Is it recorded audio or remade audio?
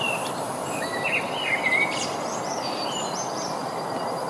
recorded